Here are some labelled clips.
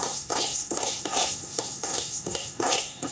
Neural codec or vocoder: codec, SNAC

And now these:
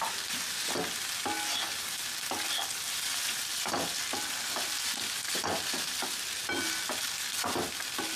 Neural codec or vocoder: none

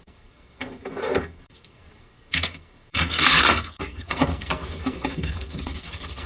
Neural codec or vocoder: codec, SNAC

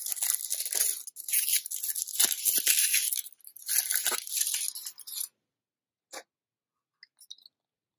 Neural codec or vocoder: none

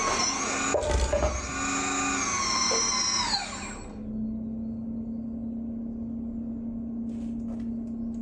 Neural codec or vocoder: none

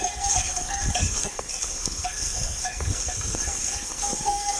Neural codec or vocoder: codec, SNAC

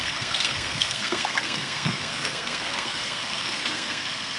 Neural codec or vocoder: codec, SNAC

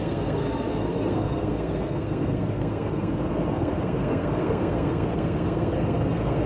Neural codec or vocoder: codec, SNAC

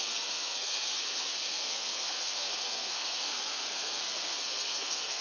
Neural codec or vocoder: codec, SNAC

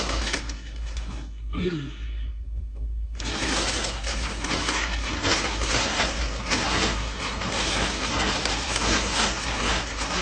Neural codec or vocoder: codec, SNAC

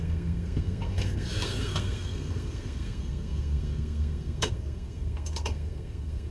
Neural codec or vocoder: codec, SNAC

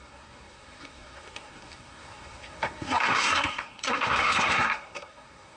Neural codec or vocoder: codec, SNAC